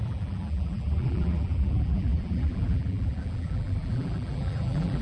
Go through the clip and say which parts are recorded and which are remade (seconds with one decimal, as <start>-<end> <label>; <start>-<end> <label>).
0.0-5.0 remade